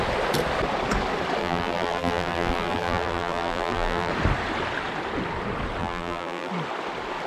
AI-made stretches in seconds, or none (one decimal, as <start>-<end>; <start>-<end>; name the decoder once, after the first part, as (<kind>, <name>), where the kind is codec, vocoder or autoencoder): 1.4-4.1 (vocoder, BigVGAN v2); 5.8-6.5